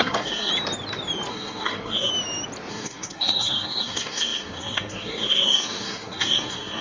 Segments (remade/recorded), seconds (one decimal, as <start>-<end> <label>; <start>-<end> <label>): 0.0-0.5 remade; 0.5-1.3 recorded; 1.3-2.1 remade; 2.1-2.7 recorded; 2.7-6.8 remade